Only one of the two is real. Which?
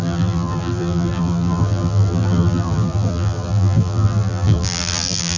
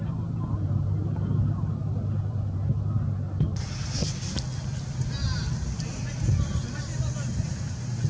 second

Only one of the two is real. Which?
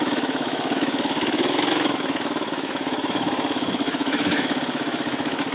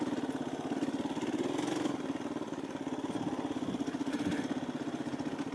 second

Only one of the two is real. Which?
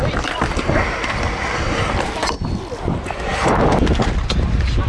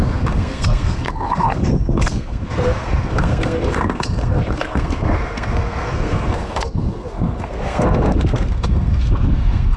first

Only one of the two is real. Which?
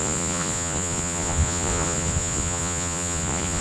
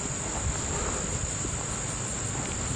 second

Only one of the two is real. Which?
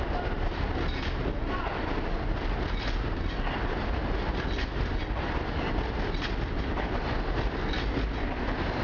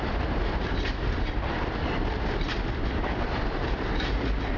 first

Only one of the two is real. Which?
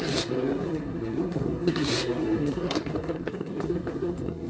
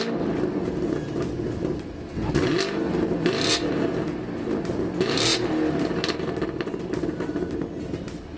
second